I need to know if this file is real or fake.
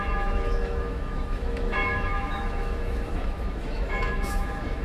fake